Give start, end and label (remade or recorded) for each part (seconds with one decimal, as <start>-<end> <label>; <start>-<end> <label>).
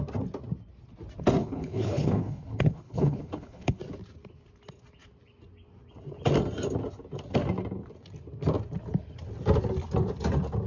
0.0-1.4 recorded; 1.4-3.8 remade; 3.8-10.7 recorded